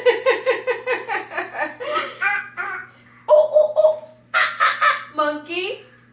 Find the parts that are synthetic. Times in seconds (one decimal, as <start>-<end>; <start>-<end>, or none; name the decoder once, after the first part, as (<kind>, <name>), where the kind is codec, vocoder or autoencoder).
none